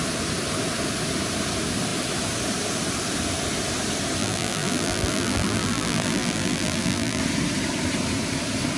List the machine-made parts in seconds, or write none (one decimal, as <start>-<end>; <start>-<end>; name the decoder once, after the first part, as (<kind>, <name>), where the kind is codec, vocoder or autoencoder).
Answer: 4.2-7.2 (vocoder, BigVGAN v2)